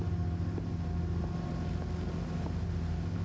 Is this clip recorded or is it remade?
recorded